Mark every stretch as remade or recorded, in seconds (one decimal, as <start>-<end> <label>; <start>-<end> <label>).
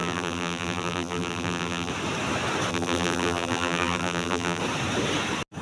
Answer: 0.0-1.9 remade; 1.9-2.7 recorded; 2.7-4.6 remade; 4.6-5.6 recorded